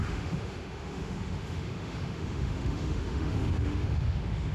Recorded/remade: remade